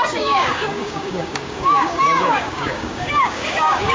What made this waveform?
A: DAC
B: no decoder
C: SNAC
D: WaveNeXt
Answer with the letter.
A